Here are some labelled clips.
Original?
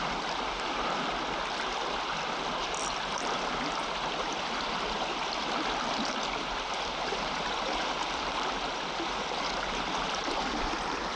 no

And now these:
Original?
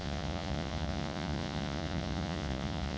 no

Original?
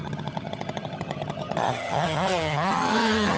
no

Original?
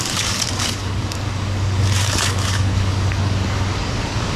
no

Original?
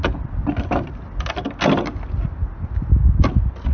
yes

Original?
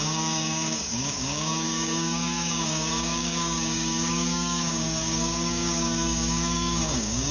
no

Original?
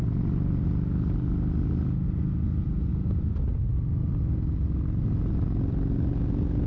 yes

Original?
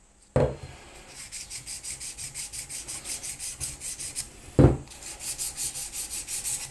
yes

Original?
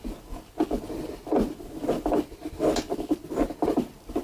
yes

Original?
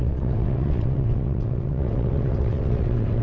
no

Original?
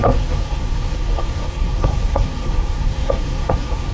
no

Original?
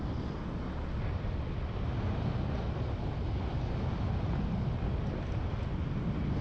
yes